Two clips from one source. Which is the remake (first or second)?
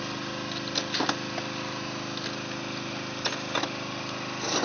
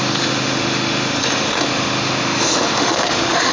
second